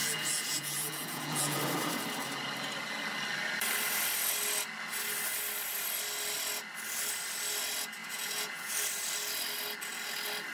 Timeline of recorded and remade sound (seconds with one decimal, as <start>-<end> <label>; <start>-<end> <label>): 0.0-1.6 remade; 1.6-8.0 recorded; 8.0-8.7 remade; 8.7-10.5 recorded